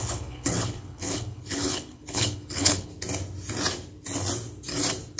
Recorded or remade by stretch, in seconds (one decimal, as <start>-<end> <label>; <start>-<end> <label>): 0.0-2.9 remade; 2.9-5.2 recorded